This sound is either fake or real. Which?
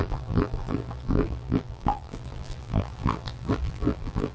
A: fake